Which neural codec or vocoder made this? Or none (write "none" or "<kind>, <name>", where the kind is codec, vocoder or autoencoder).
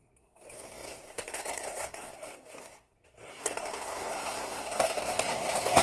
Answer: codec, SNAC